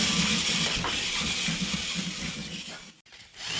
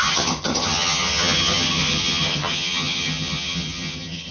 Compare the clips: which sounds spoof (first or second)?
second